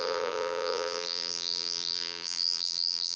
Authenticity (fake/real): fake